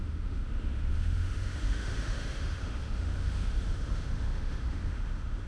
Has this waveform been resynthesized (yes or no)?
yes